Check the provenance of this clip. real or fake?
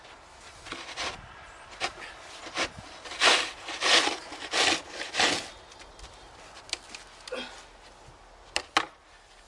real